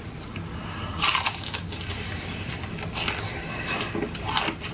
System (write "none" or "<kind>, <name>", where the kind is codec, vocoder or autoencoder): none